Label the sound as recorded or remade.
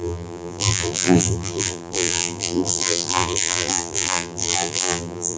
remade